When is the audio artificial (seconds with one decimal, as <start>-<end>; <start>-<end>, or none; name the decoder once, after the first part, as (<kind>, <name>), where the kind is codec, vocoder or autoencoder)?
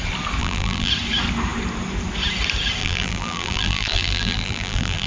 0.4-0.9 (vocoder, BigVGAN v2); 2.8-5.1